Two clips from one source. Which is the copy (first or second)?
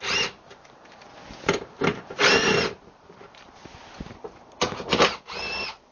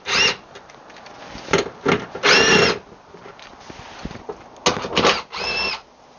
first